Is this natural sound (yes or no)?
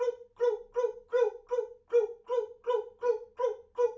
yes